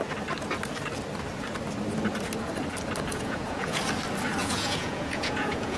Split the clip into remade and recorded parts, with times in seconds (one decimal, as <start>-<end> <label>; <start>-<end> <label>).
0.0-3.1 recorded; 3.1-3.8 remade; 3.8-4.4 recorded; 4.4-5.8 remade